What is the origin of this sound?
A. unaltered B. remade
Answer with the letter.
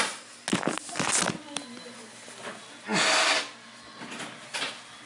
A